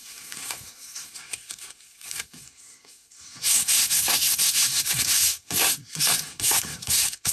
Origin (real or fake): fake